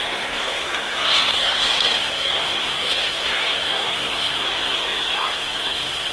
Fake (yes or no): yes